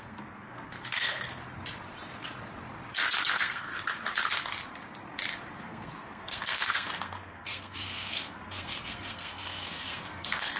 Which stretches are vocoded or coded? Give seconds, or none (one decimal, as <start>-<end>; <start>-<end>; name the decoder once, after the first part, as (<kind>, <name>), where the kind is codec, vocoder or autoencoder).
0.0-1.4 (codec, SNAC); 3.3-3.7; 5.6-10.6